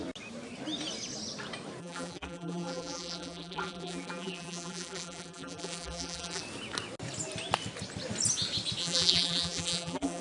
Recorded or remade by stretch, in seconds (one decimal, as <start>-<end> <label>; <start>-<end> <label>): 0.0-1.8 recorded; 1.8-6.4 remade; 6.4-8.8 recorded; 8.8-10.2 remade